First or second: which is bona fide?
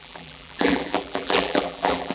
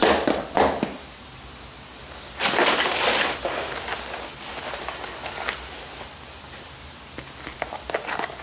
second